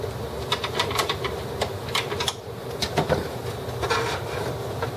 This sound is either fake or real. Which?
real